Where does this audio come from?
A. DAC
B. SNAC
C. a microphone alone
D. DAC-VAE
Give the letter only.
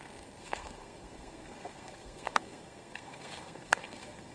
B